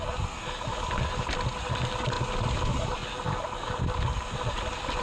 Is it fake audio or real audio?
real